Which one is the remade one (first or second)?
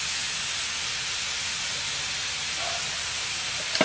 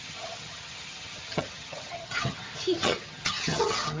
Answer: second